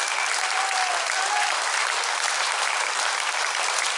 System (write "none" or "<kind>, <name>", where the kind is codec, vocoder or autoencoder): none